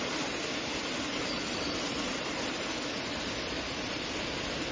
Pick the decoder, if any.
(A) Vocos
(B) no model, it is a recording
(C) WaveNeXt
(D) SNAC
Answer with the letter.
B